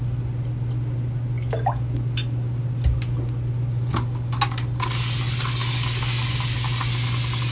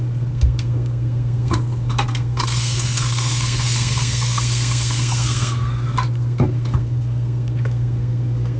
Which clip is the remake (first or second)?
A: second